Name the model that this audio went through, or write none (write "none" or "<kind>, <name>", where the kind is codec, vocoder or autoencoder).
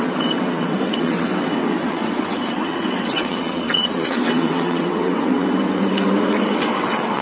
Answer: vocoder, WaveNeXt